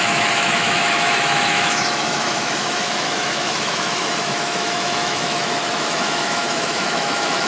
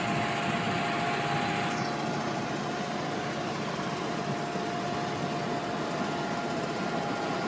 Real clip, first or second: second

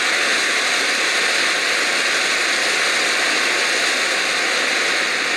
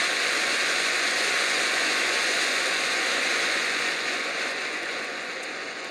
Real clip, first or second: first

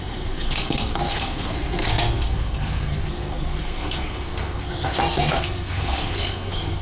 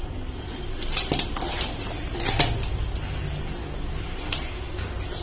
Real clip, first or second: second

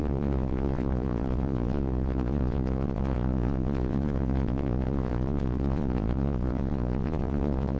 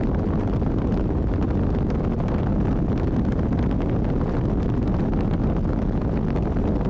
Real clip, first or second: second